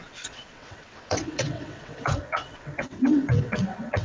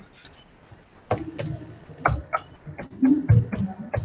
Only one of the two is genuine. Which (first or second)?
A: second